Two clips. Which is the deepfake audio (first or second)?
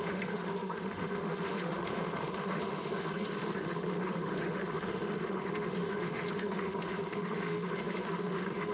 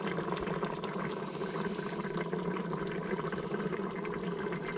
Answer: first